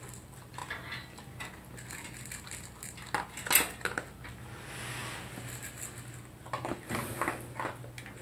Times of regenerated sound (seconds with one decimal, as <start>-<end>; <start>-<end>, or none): none